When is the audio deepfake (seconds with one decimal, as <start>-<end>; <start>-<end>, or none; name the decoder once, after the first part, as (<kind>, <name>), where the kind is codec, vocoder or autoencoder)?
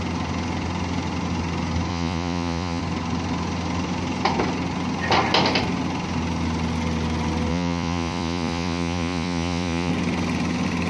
1.9-2.8 (vocoder, Vocos); 7.5-9.9